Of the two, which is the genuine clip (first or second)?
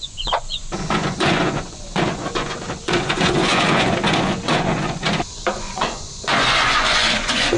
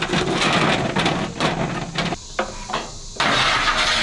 second